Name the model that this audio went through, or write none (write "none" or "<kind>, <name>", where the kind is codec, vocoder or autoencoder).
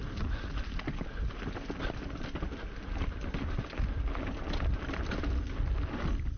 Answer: none